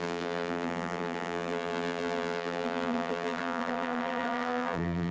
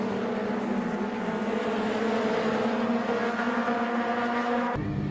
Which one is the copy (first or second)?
first